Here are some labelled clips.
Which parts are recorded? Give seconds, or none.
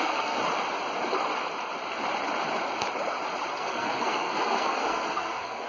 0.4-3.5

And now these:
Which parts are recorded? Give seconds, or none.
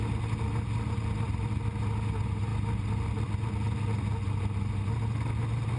0.0-5.8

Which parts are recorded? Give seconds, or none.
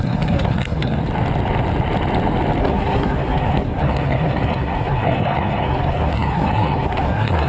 1.0-2.6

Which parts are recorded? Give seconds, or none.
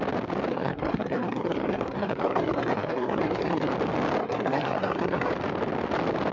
0.0-0.5; 3.7-4.2; 5.3-6.3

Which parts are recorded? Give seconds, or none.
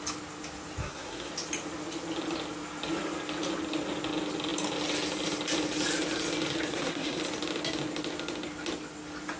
0.0-0.8; 1.3-6.7; 7.2-9.4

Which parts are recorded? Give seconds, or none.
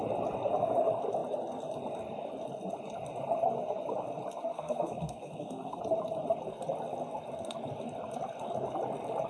0.0-4.5; 5.8-9.3